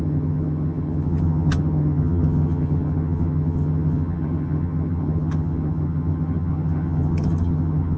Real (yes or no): no